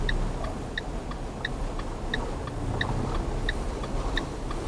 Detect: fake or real real